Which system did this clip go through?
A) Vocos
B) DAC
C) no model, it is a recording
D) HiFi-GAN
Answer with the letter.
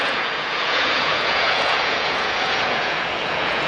A